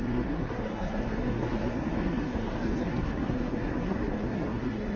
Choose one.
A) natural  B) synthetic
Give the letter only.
B